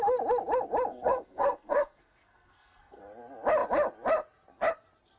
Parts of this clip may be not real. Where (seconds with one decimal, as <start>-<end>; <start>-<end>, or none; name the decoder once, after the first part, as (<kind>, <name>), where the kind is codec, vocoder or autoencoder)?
0.9-3.0 (codec, SNAC)